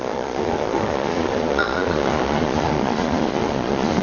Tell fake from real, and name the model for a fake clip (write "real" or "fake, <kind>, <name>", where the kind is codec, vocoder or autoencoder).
fake, vocoder, Vocos